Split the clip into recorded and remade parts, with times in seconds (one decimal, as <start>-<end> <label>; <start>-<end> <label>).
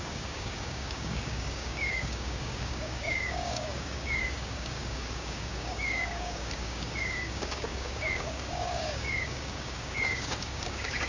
0.0-11.1 remade